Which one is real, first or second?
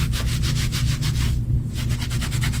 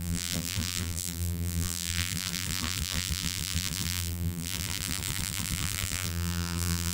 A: first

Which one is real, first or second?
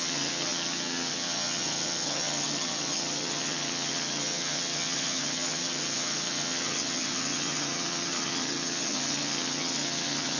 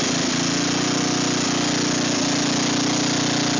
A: second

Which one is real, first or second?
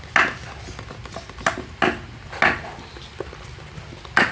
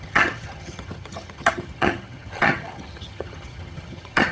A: first